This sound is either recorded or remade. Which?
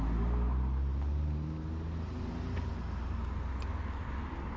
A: recorded